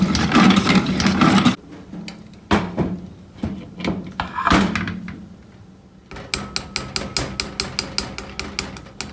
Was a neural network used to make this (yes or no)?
no